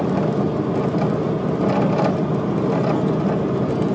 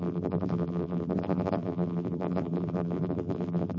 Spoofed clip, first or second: second